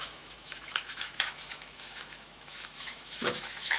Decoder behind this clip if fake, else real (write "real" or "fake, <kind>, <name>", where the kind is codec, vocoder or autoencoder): fake, autoencoder, DAC-VAE